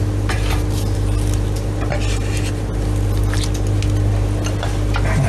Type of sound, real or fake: real